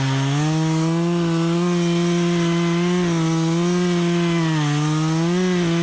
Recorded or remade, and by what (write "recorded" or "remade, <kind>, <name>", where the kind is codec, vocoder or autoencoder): recorded